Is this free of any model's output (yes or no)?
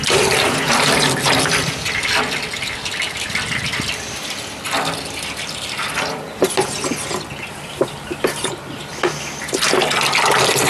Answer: yes